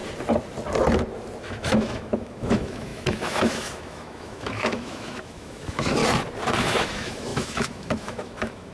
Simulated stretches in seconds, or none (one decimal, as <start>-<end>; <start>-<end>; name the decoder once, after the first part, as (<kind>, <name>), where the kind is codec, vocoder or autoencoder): 1.4-6.0 (autoencoder, DAC-VAE); 6.6-8.7